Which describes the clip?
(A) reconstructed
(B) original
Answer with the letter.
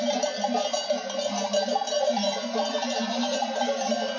B